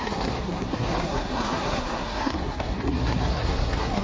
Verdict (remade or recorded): remade